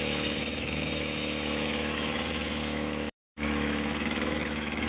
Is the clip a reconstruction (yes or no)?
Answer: yes